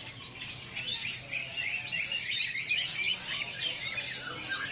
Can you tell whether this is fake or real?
fake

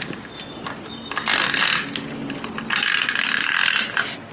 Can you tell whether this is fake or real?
real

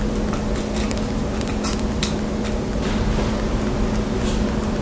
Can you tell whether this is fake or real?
real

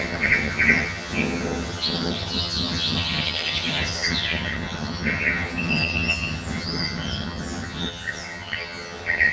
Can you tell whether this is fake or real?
fake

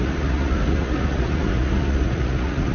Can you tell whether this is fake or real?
fake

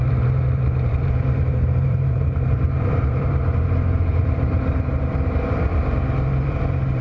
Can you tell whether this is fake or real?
fake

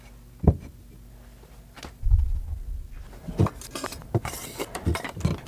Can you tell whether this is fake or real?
real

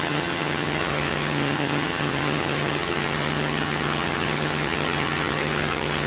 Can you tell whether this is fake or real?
fake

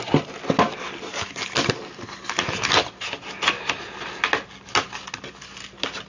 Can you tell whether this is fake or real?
real